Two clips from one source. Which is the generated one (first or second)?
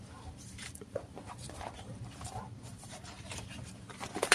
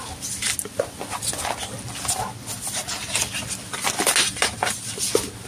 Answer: first